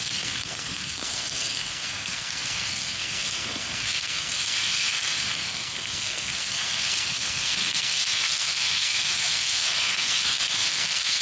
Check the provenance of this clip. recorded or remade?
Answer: remade